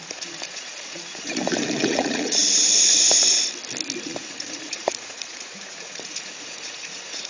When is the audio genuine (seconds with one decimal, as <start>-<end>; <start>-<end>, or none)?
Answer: 2.4-4.0